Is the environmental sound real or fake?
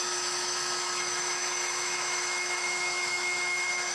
fake